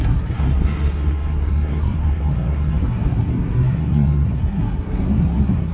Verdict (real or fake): fake